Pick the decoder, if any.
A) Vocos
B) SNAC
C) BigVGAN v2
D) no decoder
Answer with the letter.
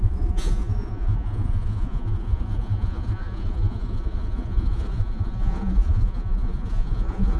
A